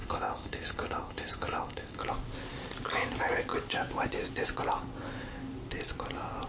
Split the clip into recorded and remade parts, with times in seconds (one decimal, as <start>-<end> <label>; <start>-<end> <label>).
0.0-2.0 remade; 2.0-6.5 recorded